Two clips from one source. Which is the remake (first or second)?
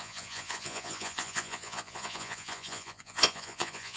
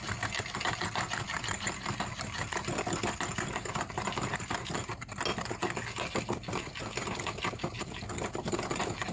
first